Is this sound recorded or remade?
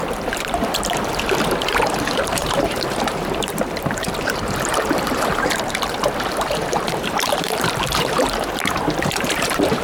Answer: remade